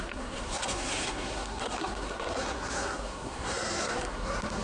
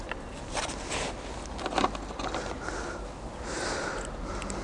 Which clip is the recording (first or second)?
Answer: second